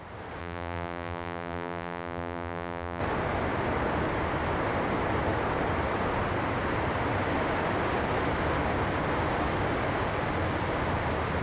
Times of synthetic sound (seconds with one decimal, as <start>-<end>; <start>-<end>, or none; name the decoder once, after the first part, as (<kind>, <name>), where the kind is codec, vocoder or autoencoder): 0.4-3.0 (vocoder, BigVGAN v2)